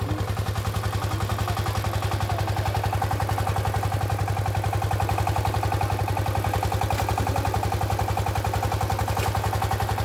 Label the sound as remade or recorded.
recorded